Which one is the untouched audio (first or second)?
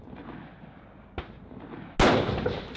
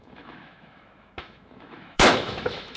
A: first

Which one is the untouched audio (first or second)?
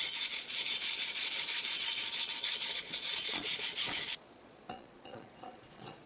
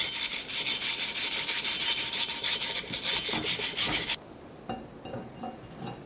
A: second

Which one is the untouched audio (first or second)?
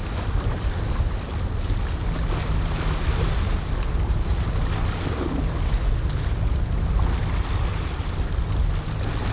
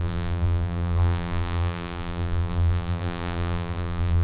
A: first